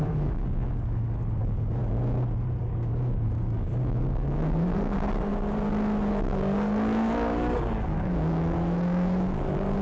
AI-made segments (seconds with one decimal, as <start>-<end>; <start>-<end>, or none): 0.0-1.8; 2.6-5.3; 6.1-9.8